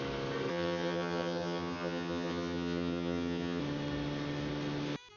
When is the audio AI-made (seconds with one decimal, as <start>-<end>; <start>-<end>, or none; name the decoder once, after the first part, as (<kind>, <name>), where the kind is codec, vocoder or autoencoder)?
0.5-3.6 (vocoder, HiFi-GAN)